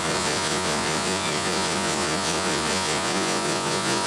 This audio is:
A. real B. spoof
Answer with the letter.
B